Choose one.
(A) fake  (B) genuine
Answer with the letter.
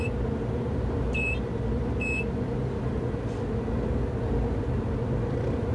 B